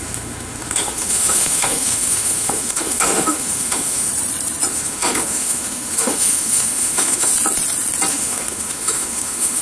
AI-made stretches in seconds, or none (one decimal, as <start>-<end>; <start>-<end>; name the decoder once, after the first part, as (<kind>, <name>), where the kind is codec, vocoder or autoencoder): 0.0-4.1 (autoencoder, DAC-VAE); 4.7-7.3; 8.1-9.6